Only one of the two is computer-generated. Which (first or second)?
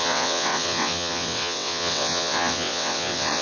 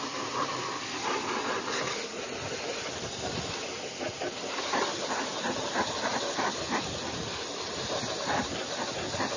first